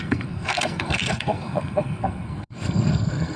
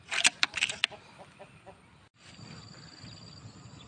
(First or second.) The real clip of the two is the second